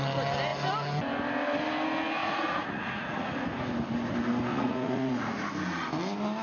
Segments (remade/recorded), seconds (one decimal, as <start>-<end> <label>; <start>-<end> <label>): 0.0-2.2 recorded; 2.2-3.3 remade; 3.3-4.5 recorded; 4.5-5.4 remade; 5.4-6.4 recorded